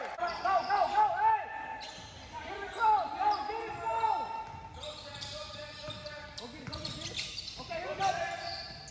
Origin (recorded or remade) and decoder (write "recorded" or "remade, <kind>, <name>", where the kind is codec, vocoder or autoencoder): recorded